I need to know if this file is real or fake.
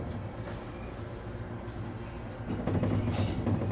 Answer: real